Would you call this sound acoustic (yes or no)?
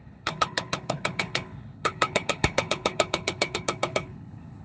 no